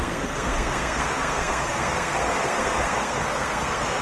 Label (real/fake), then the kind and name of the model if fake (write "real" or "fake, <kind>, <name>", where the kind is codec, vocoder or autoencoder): fake, codec, SNAC